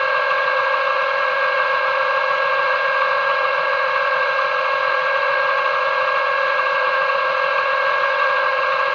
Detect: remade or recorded remade